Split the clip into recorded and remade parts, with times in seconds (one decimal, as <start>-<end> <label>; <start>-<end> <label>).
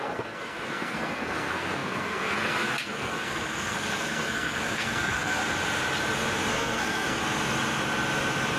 0.0-5.4 remade; 5.4-6.5 recorded; 6.5-7.2 remade; 7.2-8.6 recorded